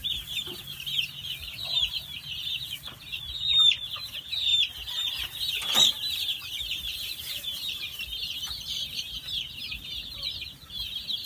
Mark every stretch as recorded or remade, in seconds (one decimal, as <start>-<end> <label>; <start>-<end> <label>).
0.0-4.5 remade; 4.5-5.5 recorded; 5.5-11.3 remade